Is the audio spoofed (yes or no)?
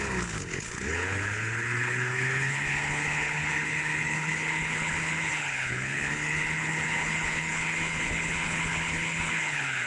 yes